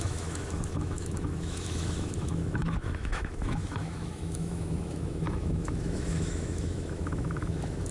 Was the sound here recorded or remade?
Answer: remade